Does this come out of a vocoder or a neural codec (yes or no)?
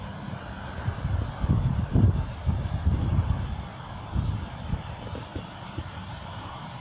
yes